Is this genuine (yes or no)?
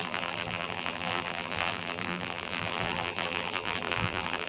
no